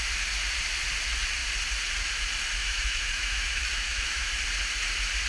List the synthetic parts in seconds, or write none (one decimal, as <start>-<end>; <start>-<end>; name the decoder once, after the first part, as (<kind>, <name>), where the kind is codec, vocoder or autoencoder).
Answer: 2.6-4.3 (autoencoder, DAC-VAE)